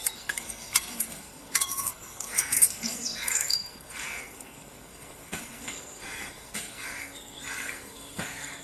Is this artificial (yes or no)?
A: yes